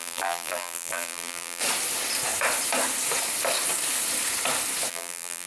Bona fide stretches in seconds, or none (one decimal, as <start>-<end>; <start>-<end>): 1.6-4.9